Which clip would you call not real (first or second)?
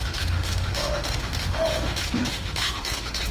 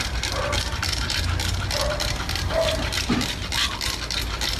first